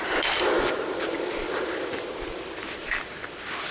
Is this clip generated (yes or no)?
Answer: yes